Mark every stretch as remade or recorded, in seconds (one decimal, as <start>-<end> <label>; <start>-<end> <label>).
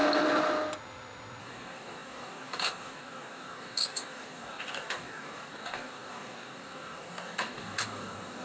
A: 0.0-1.4 recorded; 1.4-8.4 remade